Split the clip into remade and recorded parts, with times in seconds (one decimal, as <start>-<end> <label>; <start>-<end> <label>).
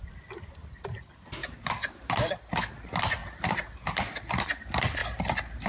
0.0-1.4 recorded; 1.4-2.3 remade; 2.3-5.7 recorded